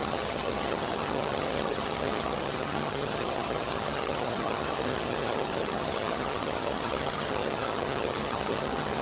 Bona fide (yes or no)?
no